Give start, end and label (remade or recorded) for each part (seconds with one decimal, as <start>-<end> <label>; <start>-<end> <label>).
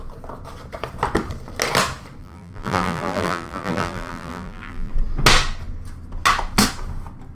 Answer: 0.0-2.2 recorded; 2.2-4.9 remade; 4.9-7.3 recorded